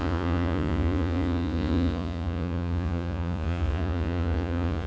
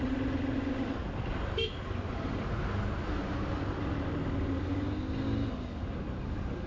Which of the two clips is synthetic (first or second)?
first